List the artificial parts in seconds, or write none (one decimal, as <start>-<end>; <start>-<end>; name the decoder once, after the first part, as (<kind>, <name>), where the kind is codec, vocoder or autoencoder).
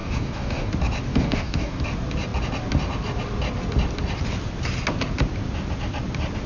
0.0-0.7 (codec, DAC); 1.1-1.8